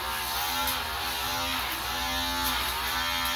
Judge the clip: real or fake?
real